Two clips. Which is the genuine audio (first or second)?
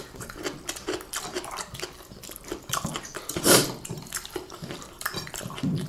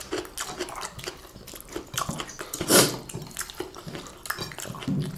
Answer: second